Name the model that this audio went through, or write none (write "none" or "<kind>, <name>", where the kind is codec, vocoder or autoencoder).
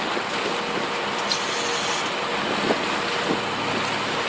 none